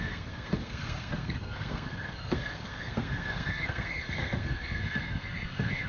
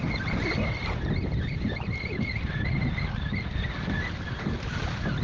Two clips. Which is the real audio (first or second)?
second